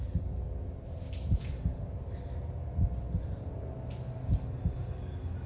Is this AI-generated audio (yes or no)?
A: no